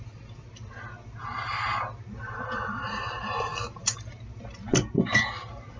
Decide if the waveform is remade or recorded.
recorded